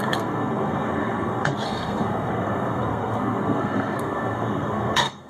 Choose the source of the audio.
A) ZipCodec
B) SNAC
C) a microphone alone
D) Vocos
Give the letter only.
B